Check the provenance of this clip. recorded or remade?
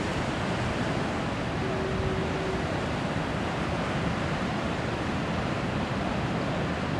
recorded